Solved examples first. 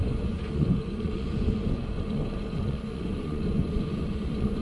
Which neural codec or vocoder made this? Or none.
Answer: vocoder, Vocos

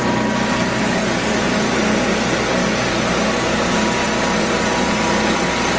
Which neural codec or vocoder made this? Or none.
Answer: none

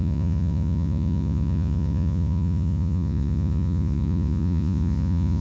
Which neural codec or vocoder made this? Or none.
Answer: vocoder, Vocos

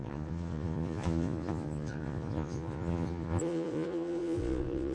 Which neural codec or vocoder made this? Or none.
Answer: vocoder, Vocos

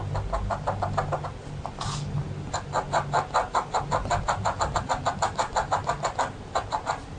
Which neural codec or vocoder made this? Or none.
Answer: none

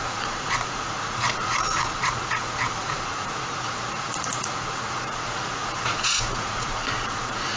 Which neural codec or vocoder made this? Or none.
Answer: vocoder, Vocos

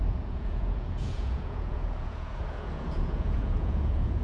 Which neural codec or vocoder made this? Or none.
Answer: vocoder, Vocos